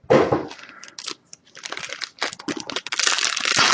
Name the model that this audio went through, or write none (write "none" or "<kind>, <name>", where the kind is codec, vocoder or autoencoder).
none